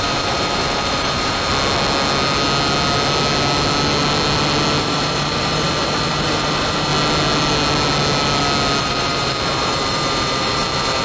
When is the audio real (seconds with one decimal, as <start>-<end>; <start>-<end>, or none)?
1.5-4.8; 6.9-8.8